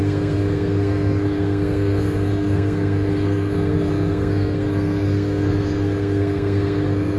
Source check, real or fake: fake